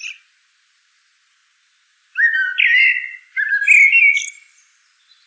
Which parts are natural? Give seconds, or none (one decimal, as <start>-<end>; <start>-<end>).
0.0-5.3